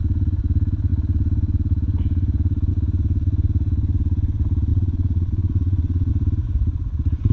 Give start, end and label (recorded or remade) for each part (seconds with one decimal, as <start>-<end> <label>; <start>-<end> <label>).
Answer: 0.0-4.7 recorded; 4.7-6.1 remade; 6.1-7.3 recorded